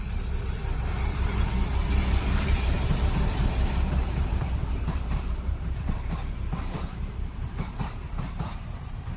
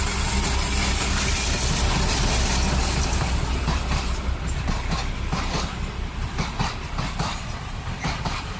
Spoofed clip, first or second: first